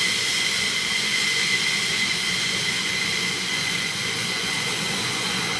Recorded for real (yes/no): no